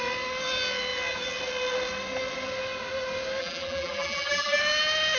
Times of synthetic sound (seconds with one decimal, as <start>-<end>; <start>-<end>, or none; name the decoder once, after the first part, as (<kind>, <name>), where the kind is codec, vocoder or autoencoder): 3.4-4.6 (vocoder, BigVGAN v2)